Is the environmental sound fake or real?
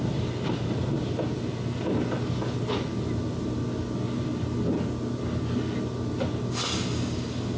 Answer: real